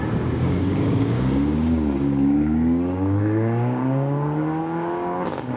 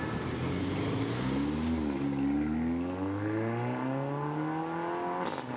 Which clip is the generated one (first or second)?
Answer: first